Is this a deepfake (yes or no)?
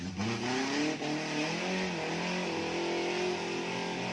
no